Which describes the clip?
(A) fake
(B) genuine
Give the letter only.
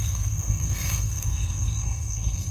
A